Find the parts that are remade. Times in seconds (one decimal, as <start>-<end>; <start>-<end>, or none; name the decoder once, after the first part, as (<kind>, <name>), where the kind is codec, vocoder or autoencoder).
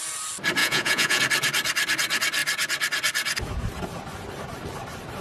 0.6-1.2 (vocoder, Vocos)